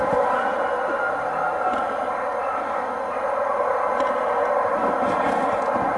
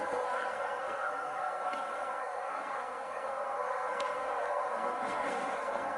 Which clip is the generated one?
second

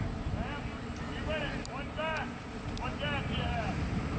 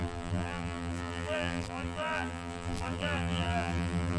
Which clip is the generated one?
second